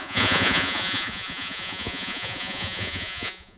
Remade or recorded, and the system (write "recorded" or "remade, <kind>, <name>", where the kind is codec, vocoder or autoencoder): remade, vocoder, Vocos